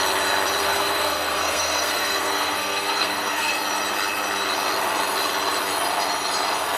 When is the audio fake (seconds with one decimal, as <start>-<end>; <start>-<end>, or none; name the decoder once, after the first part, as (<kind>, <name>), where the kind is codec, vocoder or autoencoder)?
0.6-3.5 (codec, SNAC)